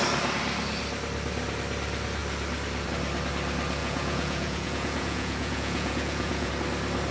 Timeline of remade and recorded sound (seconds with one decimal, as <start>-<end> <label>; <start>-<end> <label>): 0.0-3.8 recorded; 3.8-6.5 remade; 6.5-7.1 recorded